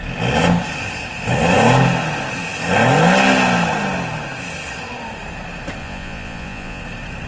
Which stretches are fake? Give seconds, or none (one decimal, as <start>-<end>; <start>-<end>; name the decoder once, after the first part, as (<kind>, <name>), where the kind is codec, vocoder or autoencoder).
5.8-6.8 (vocoder, Vocos)